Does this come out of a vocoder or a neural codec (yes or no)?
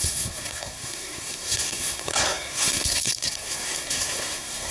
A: yes